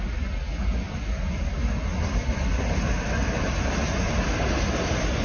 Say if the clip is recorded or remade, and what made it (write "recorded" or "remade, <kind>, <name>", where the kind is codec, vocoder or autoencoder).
recorded